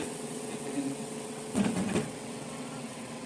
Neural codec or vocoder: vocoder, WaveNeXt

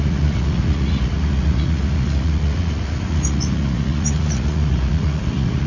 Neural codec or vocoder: vocoder, Vocos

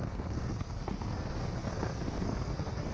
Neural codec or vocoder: codec, SNAC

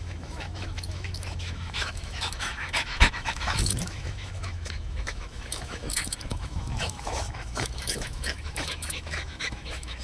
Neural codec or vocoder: autoencoder, DAC-VAE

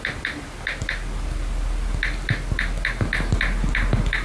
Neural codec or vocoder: none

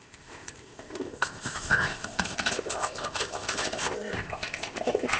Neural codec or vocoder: codec, ZipCodec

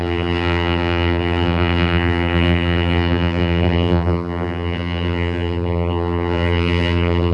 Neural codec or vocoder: vocoder, BigVGAN v2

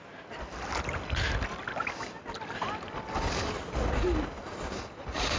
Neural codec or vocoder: none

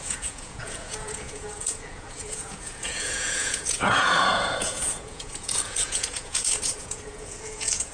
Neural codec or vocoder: vocoder, Vocos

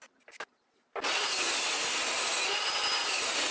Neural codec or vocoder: none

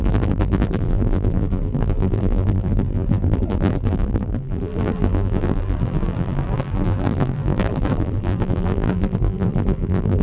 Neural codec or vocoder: vocoder, BigVGAN v2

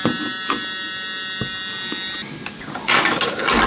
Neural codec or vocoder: none